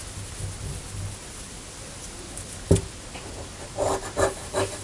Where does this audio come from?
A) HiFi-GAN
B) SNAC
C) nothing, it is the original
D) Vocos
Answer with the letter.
C